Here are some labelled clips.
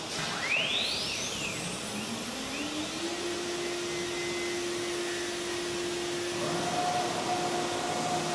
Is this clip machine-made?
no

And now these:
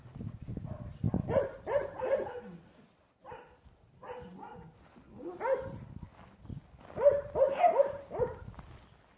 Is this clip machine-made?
no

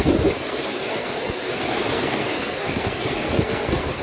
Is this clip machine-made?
yes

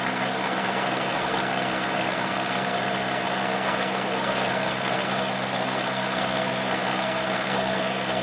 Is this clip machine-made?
yes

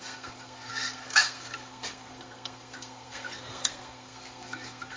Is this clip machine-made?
yes